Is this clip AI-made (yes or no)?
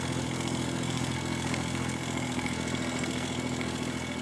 yes